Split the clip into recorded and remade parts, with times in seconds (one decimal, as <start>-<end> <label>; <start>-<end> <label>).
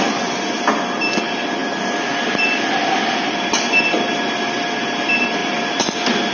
0.0-6.3 recorded